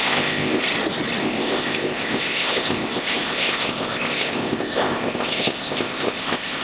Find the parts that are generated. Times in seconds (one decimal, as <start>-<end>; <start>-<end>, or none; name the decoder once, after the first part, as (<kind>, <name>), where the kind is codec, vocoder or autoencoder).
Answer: 0.0-0.6 (codec, ZipCodec); 1.2-6.6